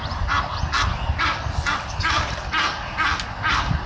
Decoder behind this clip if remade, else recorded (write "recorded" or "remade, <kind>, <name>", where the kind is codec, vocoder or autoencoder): recorded